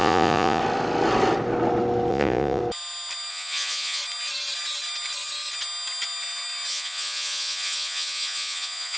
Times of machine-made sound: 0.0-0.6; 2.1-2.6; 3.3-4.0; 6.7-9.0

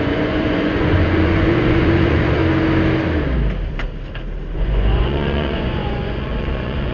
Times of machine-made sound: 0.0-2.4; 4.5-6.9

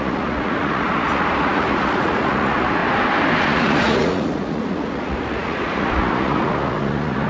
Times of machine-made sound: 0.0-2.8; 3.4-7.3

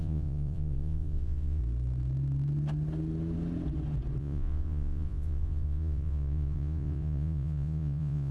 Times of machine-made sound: 0.0-1.6; 4.2-8.3

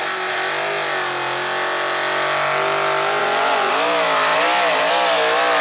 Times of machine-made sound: 3.2-3.7

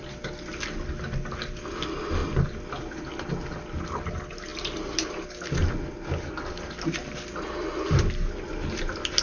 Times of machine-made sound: none